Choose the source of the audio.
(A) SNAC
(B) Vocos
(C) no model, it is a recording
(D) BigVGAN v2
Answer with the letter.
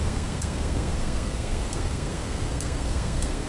A